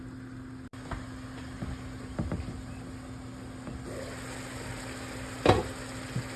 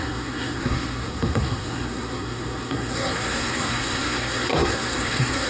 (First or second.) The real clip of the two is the first